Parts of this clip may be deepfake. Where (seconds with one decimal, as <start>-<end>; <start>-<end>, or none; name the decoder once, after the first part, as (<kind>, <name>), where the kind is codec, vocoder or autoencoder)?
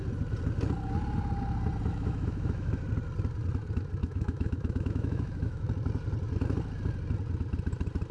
1.9-2.8 (autoencoder, DAC-VAE); 4.0-5.7